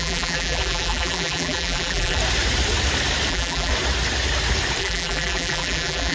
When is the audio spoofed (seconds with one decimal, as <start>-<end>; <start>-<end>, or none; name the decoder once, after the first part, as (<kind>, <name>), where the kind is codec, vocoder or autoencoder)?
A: 0.0-2.2 (vocoder, BigVGAN v2); 3.3-3.7; 4.8-6.1